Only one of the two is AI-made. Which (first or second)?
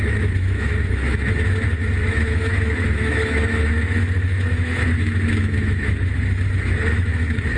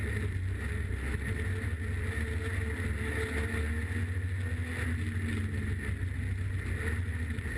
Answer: first